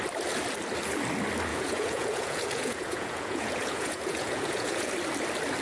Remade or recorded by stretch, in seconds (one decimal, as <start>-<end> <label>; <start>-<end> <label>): 0.0-1.5 recorded; 1.5-4.9 remade; 4.9-5.6 recorded